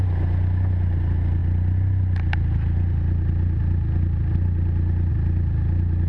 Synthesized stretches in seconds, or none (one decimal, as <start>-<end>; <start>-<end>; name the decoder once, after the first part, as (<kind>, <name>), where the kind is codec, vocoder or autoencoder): none